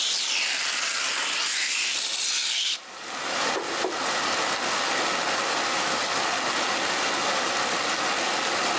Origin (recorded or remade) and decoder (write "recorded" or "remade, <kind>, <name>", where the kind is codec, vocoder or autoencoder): recorded